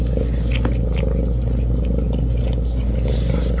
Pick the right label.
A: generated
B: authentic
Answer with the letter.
B